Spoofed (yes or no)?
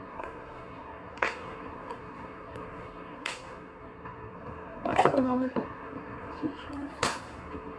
yes